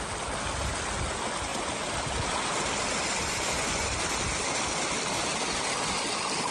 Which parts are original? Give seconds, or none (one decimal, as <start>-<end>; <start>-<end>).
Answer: 0.0-3.2; 3.9-6.5